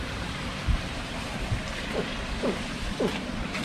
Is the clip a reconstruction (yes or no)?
yes